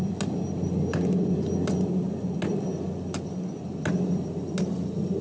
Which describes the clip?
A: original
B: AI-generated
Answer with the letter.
A